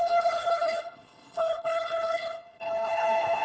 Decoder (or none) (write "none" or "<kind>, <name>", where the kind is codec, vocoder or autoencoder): codec, HILCodec